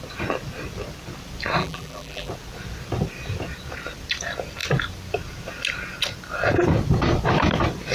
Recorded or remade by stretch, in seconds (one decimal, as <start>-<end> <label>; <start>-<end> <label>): 0.0-1.6 recorded; 1.6-2.3 remade; 2.3-7.9 recorded